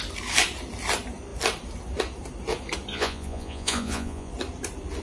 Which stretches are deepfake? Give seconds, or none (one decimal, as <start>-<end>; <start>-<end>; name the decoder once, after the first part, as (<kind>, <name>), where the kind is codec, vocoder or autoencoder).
2.9-4.3 (vocoder, Vocos)